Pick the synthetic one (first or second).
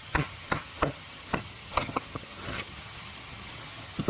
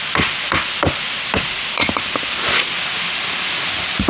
first